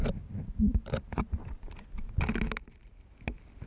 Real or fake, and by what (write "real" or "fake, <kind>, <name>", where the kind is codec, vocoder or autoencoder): real